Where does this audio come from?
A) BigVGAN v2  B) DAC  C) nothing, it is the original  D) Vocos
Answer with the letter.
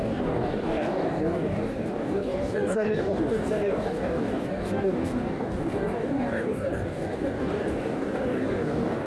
B